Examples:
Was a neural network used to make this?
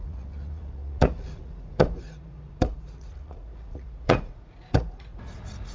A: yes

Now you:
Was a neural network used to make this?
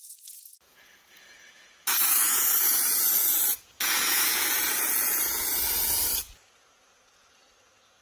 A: yes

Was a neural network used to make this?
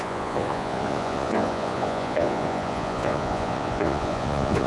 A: yes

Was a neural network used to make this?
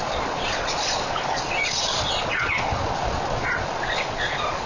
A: yes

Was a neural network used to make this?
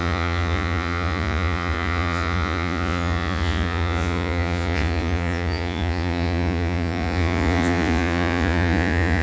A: yes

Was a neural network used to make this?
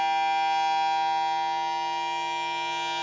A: no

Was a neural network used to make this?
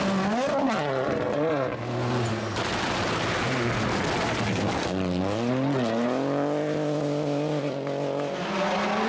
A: no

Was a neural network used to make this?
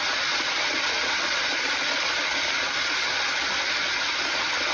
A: no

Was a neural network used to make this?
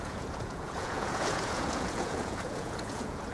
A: yes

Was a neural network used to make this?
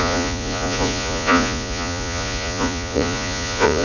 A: yes